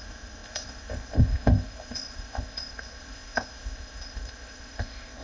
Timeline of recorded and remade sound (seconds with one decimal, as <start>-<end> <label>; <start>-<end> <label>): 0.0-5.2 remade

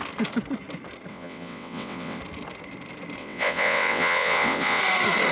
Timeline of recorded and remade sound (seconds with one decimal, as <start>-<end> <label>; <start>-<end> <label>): 0.0-1.1 recorded; 1.1-2.2 remade; 2.2-3.2 recorded; 3.2-4.8 remade; 4.8-5.3 recorded

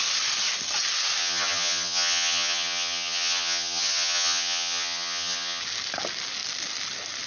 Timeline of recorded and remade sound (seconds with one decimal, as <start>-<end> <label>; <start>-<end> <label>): 0.0-1.2 recorded; 1.2-5.6 remade; 5.6-7.3 recorded